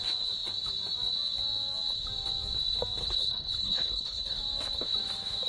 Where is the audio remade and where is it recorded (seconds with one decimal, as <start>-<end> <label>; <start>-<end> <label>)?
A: 0.0-3.0 recorded; 3.0-4.4 remade; 4.4-5.5 recorded